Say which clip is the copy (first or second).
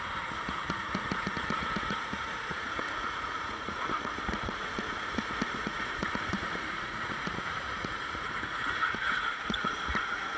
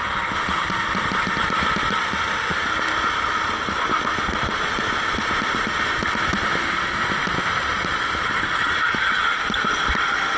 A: first